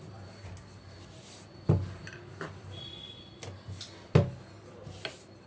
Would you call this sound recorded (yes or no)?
yes